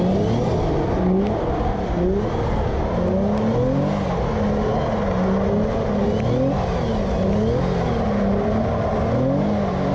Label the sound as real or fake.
real